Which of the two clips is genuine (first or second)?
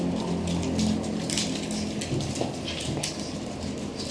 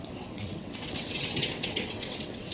first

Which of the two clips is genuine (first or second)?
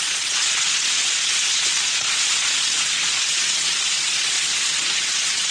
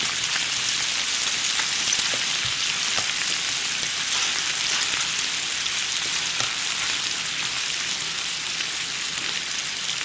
second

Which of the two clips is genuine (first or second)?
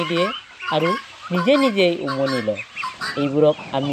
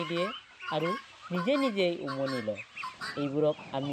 second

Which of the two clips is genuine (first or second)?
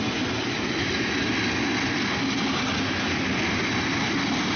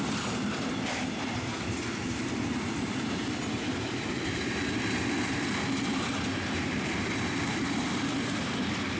first